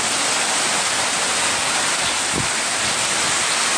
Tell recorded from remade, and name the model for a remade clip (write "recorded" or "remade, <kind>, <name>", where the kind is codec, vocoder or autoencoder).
recorded